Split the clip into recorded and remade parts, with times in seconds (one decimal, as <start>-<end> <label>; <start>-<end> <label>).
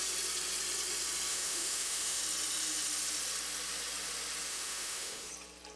0.0-1.3 recorded; 1.3-2.2 remade; 2.2-4.5 recorded; 4.5-5.3 remade; 5.3-5.8 recorded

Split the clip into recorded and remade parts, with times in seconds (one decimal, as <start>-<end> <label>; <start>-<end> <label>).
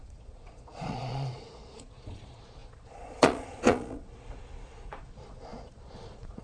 0.0-6.4 remade